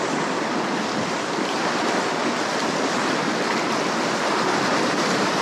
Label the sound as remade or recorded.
remade